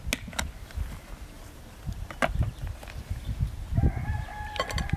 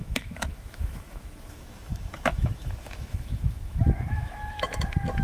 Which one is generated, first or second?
second